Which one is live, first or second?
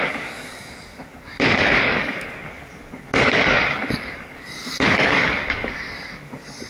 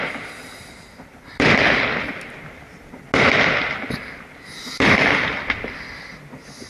second